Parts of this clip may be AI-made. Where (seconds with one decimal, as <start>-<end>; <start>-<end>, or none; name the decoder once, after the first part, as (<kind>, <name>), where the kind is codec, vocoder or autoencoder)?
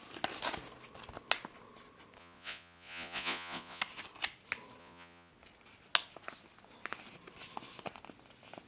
2.2-3.8 (vocoder, Vocos); 4.8-5.3